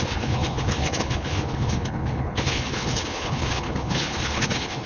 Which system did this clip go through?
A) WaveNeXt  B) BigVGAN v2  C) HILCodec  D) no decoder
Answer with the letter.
C